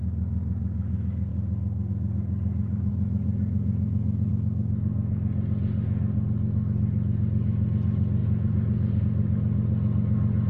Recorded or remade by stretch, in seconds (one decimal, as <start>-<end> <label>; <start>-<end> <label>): 0.0-2.9 recorded; 2.9-4.3 remade; 4.3-8.2 recorded; 8.2-9.0 remade; 9.0-10.5 recorded